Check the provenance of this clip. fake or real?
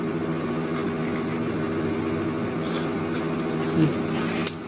real